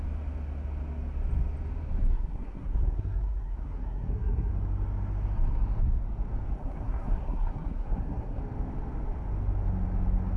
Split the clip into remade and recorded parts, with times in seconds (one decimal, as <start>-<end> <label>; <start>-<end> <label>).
0.0-2.1 recorded; 2.1-4.5 remade; 4.5-6.6 recorded; 6.6-8.4 remade; 8.4-10.4 recorded